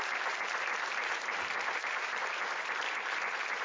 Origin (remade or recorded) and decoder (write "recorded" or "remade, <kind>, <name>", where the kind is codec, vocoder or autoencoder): remade, vocoder, BigVGAN v2